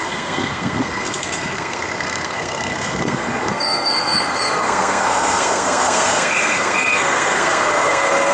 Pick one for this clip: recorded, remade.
remade